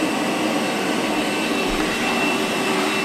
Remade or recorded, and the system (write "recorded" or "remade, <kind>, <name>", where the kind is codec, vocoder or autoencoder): remade, vocoder, BigVGAN v2